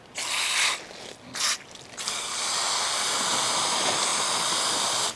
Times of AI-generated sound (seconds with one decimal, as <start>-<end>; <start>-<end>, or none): none